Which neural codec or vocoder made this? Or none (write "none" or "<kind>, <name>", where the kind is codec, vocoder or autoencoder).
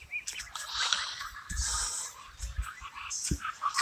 none